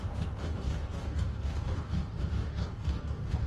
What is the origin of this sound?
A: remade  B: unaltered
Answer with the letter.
A